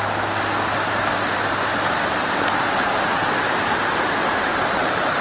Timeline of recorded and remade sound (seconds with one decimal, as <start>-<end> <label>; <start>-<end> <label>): 0.0-1.7 recorded; 1.7-4.8 remade; 4.8-5.2 recorded